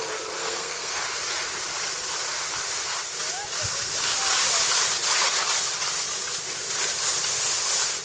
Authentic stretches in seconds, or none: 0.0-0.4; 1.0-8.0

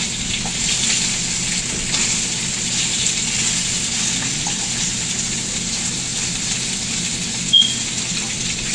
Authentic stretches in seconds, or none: 0.0-8.7